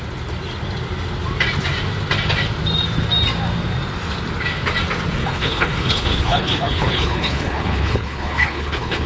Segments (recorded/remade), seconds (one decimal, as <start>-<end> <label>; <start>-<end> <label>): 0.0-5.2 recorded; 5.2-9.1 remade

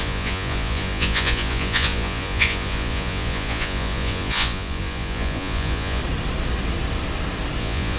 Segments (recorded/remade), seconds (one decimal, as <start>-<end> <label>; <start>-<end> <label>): 0.0-6.0 remade; 6.0-7.6 recorded; 7.6-8.0 remade

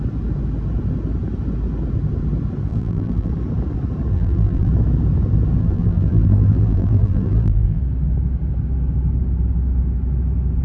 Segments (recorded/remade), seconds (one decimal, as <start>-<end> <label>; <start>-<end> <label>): 0.0-2.7 recorded; 2.7-3.3 remade; 3.3-4.1 recorded; 4.1-4.7 remade; 4.7-5.6 recorded; 5.6-7.8 remade; 7.8-10.6 recorded